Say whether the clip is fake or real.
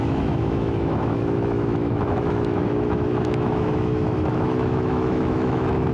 fake